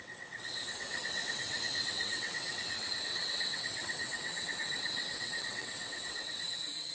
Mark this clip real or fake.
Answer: fake